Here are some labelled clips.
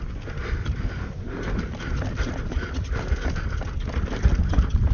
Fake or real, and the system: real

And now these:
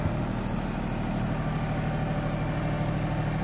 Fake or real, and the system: real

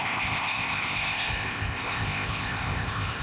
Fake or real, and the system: fake, codec, ZipCodec